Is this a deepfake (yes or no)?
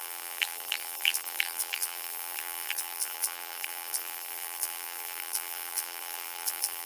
yes